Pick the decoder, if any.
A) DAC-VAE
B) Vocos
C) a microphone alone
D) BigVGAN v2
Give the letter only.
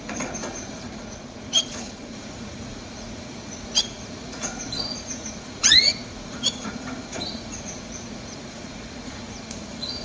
B